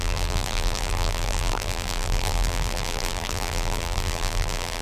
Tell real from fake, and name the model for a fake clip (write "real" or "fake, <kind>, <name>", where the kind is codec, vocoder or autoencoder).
fake, vocoder, BigVGAN v2